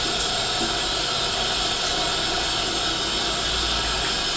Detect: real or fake real